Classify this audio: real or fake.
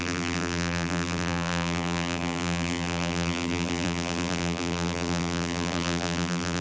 fake